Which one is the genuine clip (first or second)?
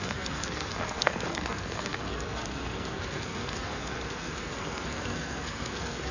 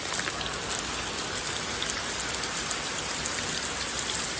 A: second